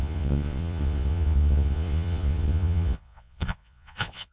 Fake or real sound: fake